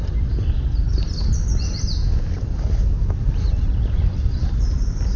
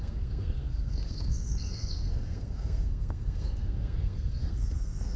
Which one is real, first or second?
first